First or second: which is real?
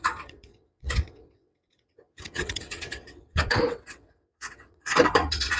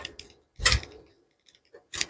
second